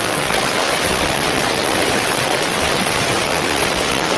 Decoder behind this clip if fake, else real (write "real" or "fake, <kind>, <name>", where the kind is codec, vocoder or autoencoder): fake, vocoder, WaveNeXt